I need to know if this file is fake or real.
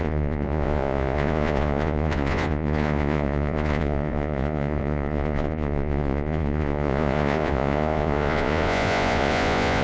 fake